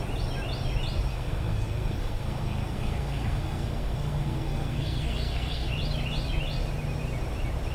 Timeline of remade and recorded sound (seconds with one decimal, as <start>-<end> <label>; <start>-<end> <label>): 0.0-1.1 recorded; 1.1-5.7 remade; 5.7-7.7 recorded